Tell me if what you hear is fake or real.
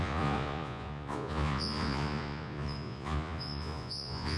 fake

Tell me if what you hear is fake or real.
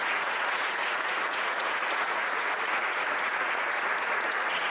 fake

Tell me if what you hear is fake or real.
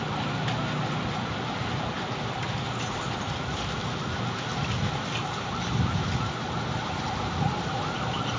real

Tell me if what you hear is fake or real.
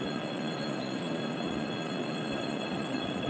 fake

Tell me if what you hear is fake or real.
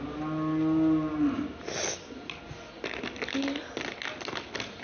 real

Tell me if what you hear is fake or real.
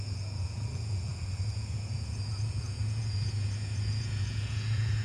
fake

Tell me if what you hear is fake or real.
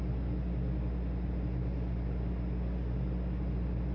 real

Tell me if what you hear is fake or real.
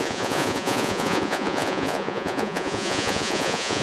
fake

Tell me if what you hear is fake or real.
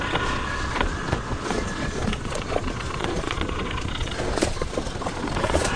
fake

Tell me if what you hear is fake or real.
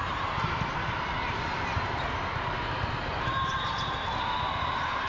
real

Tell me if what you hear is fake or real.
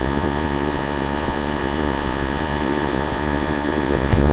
fake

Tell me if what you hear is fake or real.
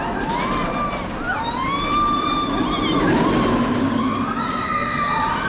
real